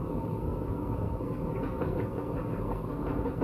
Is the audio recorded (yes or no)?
no